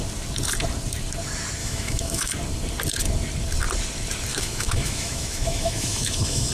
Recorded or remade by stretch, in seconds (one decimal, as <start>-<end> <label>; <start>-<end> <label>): 0.0-1.6 recorded; 1.6-2.3 remade; 2.3-4.3 recorded; 4.3-6.5 remade